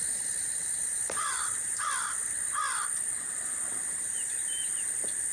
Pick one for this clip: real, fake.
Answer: real